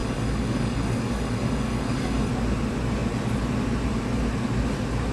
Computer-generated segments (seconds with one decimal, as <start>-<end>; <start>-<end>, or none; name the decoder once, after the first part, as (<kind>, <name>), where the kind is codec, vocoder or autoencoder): 0.0-2.3 (codec, DAC)